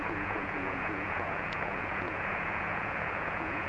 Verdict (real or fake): fake